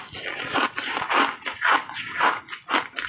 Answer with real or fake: real